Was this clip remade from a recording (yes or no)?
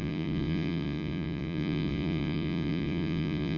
yes